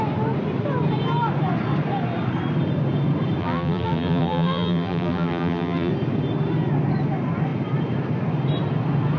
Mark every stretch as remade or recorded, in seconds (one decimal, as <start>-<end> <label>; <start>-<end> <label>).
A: 0.0-3.4 recorded; 3.4-5.9 remade; 5.9-9.2 recorded